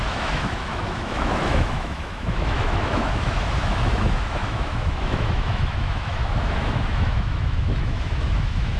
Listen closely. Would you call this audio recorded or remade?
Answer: remade